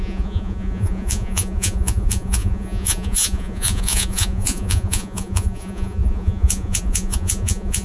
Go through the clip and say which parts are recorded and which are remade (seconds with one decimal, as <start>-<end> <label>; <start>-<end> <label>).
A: 0.0-7.8 remade